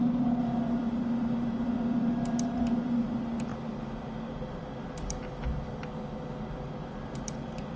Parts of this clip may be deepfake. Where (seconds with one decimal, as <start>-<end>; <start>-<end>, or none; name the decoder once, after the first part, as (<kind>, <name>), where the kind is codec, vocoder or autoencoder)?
0.0-7.8 (vocoder, BigVGAN v2)